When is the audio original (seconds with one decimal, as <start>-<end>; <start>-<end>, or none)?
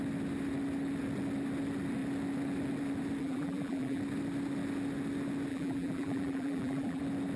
0.0-3.2; 4.0-5.5; 7.0-7.4